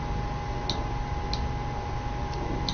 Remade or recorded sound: recorded